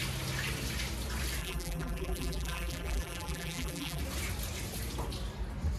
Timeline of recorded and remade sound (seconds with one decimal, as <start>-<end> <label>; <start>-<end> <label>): 0.0-1.4 recorded; 1.4-4.0 remade; 4.0-5.8 recorded